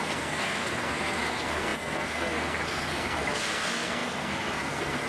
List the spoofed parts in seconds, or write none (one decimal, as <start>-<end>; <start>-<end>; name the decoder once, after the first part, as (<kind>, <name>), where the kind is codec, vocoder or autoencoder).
0.0-5.1 (codec, SNAC)